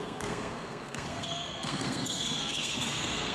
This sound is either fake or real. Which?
fake